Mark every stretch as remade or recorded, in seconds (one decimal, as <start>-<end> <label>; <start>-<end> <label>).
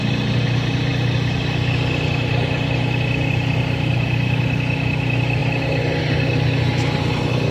0.0-7.5 recorded